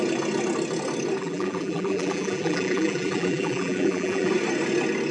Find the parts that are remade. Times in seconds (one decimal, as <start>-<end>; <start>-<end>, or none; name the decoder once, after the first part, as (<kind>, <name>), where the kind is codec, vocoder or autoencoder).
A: 1.2-4.3 (vocoder, BigVGAN v2)